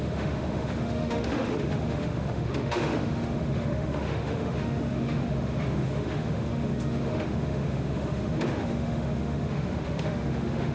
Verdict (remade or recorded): remade